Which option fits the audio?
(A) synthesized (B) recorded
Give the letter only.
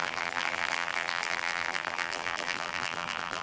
A